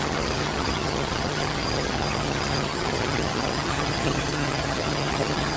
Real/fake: fake